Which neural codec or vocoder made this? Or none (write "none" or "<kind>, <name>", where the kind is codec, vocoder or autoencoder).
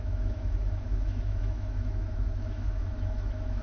autoencoder, DAC-VAE